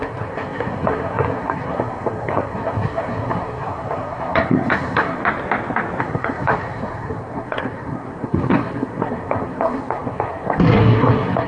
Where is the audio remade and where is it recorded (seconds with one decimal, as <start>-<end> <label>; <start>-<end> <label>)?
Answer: 0.0-5.2 remade; 5.2-6.0 recorded; 6.0-11.5 remade